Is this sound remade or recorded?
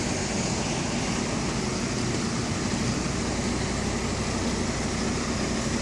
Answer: recorded